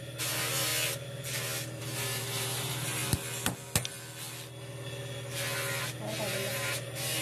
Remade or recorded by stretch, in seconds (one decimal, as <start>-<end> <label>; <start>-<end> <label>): 0.0-0.7 remade; 0.7-1.8 recorded; 1.8-3.0 remade; 3.0-6.2 recorded; 6.2-7.2 remade